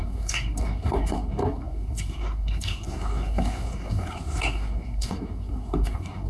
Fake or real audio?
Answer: fake